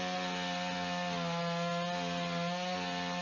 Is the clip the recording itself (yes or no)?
yes